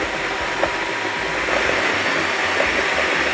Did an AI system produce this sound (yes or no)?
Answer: no